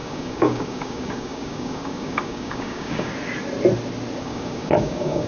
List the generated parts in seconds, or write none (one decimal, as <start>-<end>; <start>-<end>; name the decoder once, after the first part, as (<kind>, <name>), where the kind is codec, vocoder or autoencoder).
0.0-3.1 (codec, DAC); 4.2-5.3